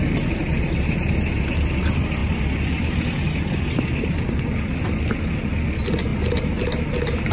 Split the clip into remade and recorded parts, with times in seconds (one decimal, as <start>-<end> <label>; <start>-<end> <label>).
0.0-7.3 recorded